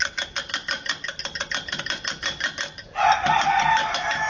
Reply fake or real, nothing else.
real